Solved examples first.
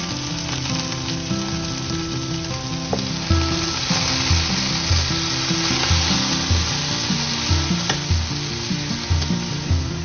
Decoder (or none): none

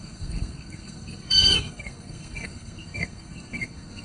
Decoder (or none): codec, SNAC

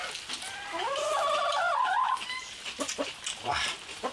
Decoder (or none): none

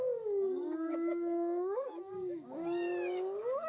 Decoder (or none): codec, DAC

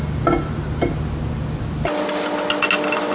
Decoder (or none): none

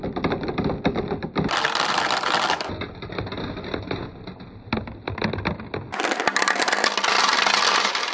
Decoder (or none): none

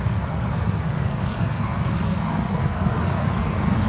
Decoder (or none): codec, SNAC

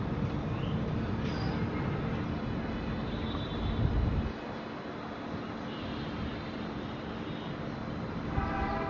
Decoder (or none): none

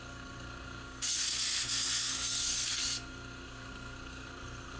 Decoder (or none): codec, SNAC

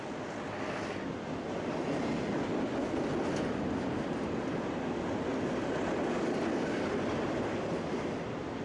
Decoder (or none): none